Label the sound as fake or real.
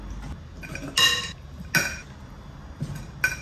real